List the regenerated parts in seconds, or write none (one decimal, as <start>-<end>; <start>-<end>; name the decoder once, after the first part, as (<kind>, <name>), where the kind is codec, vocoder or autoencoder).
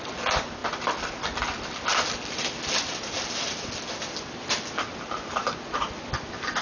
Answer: none